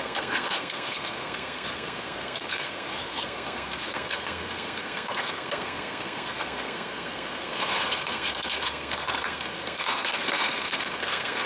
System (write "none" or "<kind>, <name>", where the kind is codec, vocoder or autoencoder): codec, SNAC